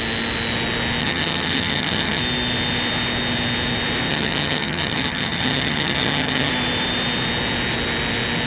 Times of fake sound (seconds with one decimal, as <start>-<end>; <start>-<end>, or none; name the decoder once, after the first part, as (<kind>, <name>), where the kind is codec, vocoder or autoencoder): 1.0-2.2 (vocoder, HiFi-GAN); 4.1-6.5